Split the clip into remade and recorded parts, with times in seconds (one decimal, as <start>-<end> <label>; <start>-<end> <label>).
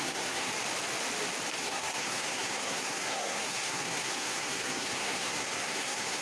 0.0-0.5 remade; 0.5-1.6 recorded; 1.6-6.2 remade